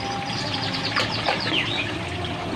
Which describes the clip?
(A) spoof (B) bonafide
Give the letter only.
B